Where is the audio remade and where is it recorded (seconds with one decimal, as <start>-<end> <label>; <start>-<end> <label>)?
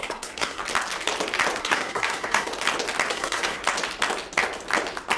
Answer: 0.0-0.6 remade; 0.6-1.6 recorded; 1.6-2.5 remade; 2.5-3.1 recorded; 3.1-3.6 remade; 3.6-5.2 recorded